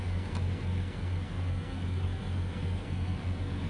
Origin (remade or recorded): remade